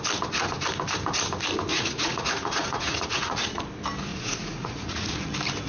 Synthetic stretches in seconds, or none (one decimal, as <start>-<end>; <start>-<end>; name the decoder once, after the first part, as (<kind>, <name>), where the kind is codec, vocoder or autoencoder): 1.7-3.6 (vocoder, Vocos); 4.1-5.3